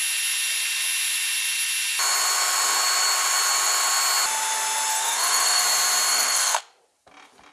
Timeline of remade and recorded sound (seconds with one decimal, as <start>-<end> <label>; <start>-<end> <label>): 0.0-4.9 recorded; 4.9-5.6 remade; 5.6-6.1 recorded; 6.1-6.6 remade; 6.6-7.5 recorded